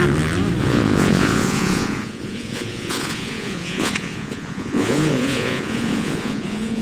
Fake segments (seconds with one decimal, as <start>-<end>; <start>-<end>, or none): 0.6-6.8